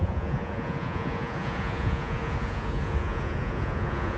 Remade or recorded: remade